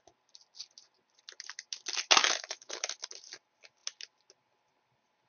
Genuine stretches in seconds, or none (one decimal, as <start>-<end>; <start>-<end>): 0.0-2.2; 2.9-5.3